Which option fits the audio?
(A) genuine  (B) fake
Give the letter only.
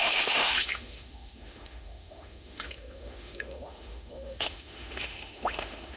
B